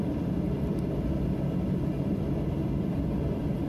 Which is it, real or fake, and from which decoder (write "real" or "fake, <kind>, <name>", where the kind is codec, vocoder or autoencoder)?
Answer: fake, vocoder, BigVGAN v2